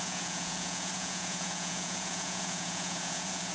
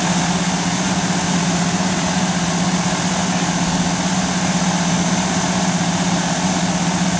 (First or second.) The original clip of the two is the second